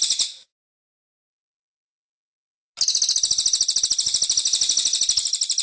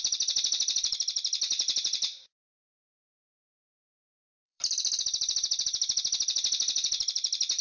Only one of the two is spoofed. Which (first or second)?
second